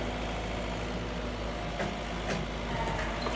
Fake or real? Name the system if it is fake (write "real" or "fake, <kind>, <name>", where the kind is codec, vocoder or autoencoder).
real